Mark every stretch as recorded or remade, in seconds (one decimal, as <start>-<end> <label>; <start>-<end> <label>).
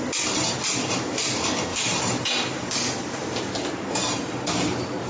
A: 0.0-1.7 recorded; 1.7-5.1 remade